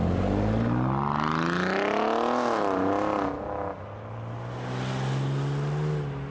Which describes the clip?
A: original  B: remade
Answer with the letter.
A